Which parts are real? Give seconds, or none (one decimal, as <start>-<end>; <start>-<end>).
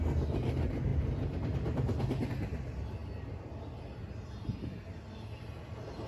0.0-6.1